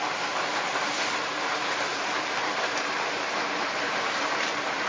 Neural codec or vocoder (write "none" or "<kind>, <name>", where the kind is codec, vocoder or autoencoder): vocoder, BigVGAN v2